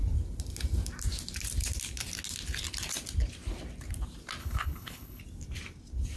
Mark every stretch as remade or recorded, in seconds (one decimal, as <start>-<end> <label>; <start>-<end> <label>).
0.0-4.4 recorded; 4.4-5.2 remade; 5.2-6.2 recorded